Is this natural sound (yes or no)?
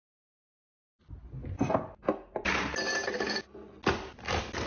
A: yes